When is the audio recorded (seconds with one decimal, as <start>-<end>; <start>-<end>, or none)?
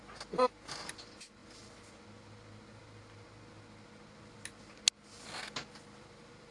0.0-6.5